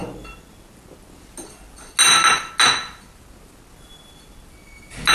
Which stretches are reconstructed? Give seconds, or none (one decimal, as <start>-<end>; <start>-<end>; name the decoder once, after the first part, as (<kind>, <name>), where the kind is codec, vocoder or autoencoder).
none